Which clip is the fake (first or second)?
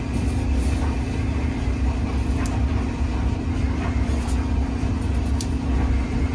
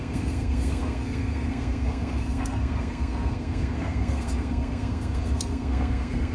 second